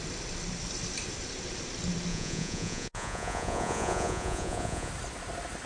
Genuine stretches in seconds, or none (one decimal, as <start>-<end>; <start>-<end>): 0.0-2.1; 4.9-5.7